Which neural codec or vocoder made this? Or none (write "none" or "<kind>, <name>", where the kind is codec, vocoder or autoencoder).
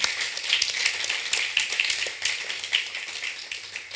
none